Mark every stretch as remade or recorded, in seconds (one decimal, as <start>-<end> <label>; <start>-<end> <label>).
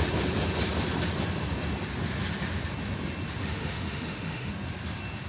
0.0-3.4 recorded; 3.4-4.5 remade; 4.5-5.3 recorded